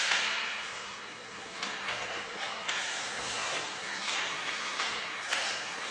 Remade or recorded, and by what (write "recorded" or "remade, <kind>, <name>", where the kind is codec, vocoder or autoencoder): remade, codec, SNAC